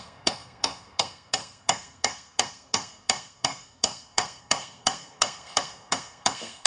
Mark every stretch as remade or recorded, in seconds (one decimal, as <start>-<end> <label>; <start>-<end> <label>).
0.0-6.7 remade